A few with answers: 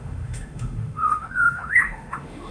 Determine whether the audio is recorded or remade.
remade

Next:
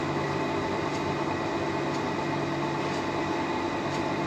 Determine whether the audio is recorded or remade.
recorded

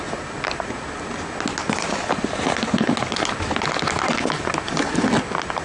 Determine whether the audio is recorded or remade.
recorded